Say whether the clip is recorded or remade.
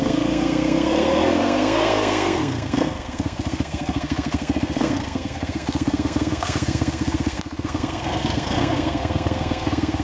remade